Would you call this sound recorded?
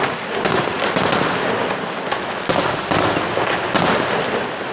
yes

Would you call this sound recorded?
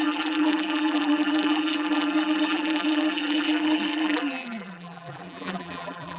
no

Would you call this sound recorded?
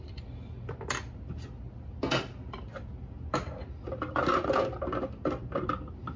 yes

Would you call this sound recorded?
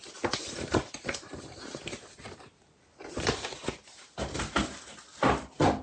yes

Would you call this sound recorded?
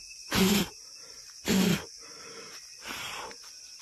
yes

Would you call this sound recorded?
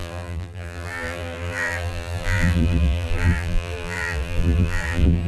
no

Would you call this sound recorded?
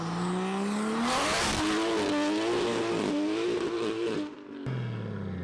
yes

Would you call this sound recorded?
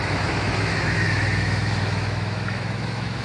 no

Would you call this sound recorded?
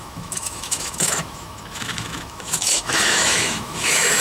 no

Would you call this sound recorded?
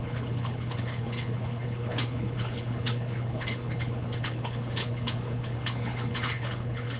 no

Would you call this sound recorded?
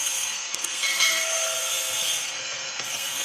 no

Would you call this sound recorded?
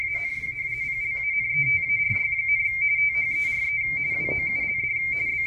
yes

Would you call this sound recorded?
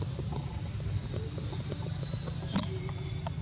no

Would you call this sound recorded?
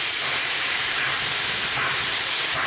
yes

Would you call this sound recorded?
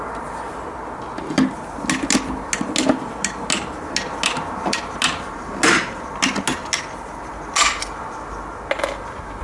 yes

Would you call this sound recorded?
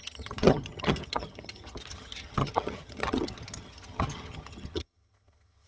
no